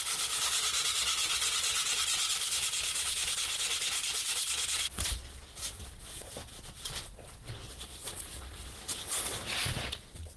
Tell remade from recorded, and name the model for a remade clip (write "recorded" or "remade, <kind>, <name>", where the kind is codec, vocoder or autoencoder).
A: remade, vocoder, Vocos